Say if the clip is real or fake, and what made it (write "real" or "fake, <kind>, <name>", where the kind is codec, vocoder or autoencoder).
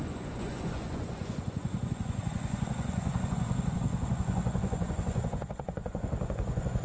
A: fake, vocoder, Vocos